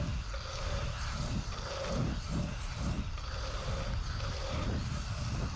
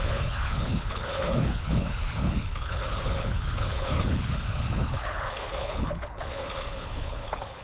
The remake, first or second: second